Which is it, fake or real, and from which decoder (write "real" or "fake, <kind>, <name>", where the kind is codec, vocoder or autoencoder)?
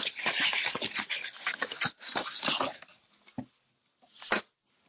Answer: real